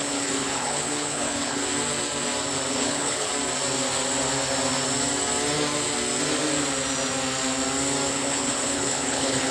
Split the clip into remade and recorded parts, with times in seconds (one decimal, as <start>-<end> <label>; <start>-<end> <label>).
0.0-1.6 remade; 1.6-2.7 recorded; 2.7-3.3 remade; 3.3-8.1 recorded; 8.1-9.5 remade